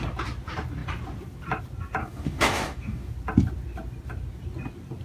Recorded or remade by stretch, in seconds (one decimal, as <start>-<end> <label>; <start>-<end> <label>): 0.0-2.0 recorded; 2.0-3.1 remade; 3.1-5.0 recorded